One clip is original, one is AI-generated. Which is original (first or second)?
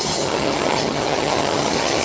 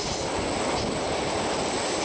second